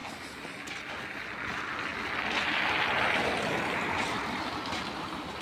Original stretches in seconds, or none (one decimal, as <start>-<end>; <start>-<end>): 0.0-1.9